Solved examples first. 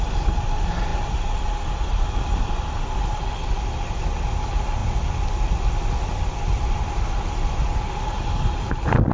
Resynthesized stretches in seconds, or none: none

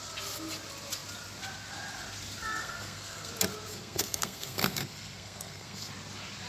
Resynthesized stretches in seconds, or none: 2.6-3.3 (codec, SNAC); 3.7-5.9

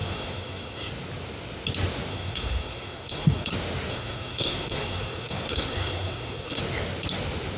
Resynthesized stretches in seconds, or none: 0.0-0.9 (codec, SNAC); 2.1-3.5; 3.9-6.6